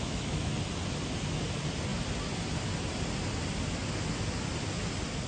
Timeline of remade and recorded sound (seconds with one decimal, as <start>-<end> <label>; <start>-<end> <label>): 0.0-0.5 remade; 0.5-5.3 recorded